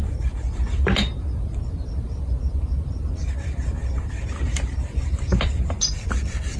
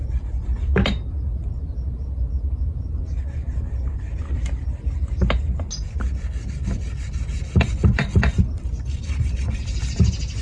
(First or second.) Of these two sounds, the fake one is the first